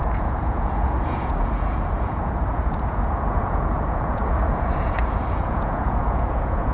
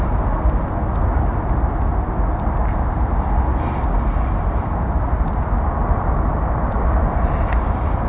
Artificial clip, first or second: first